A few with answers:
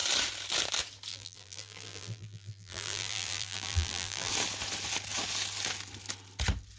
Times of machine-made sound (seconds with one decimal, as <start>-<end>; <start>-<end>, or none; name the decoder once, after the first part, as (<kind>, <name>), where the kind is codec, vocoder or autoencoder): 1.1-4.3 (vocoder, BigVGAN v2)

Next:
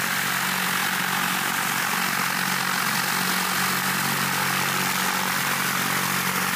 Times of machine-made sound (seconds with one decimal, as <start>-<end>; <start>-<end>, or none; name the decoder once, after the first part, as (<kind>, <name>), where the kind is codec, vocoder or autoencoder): none

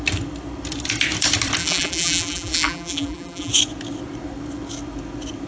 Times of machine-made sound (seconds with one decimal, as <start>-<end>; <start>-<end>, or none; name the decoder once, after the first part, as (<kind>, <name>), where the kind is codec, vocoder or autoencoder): 1.6-3.5 (vocoder, BigVGAN v2)

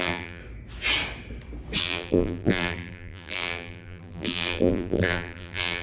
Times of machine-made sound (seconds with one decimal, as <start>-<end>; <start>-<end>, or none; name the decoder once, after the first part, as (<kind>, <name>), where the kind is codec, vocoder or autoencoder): 0.0-0.4 (vocoder, BigVGAN v2); 1.8-5.8

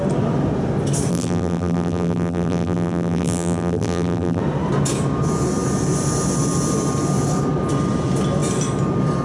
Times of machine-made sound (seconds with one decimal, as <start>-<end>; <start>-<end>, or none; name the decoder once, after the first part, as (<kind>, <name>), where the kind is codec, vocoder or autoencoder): 1.1-4.4 (vocoder, BigVGAN v2)

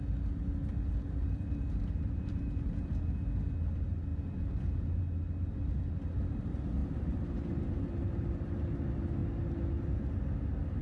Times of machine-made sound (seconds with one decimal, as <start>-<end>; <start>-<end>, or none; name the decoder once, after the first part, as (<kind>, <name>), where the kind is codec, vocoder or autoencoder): 1.2-2.9 (vocoder, BigVGAN v2); 6.8-7.8